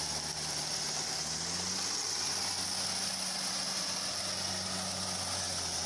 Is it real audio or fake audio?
real